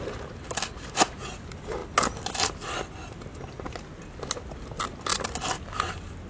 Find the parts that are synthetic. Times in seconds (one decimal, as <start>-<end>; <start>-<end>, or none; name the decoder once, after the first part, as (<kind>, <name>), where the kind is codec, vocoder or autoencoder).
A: none